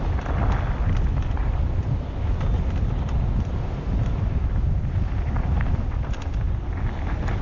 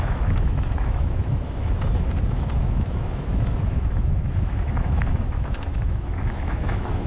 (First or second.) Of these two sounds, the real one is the first